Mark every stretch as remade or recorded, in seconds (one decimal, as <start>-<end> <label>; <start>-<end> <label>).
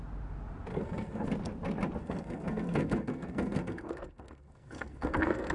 0.0-0.7 recorded; 0.7-1.3 remade; 1.3-2.0 recorded; 2.0-5.5 remade